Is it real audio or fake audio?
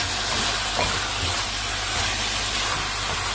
real